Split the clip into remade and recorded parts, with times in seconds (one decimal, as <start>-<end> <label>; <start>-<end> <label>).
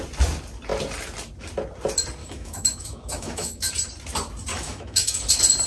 0.0-2.2 recorded; 2.2-3.7 remade; 3.7-4.5 recorded; 4.5-5.2 remade; 5.2-5.7 recorded